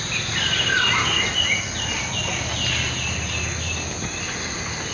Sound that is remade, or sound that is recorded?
recorded